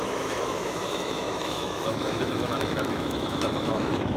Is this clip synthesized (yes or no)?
yes